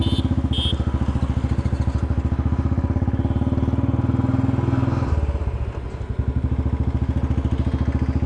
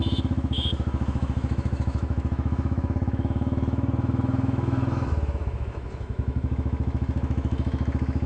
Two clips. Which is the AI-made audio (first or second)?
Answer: second